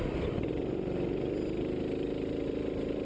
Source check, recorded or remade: recorded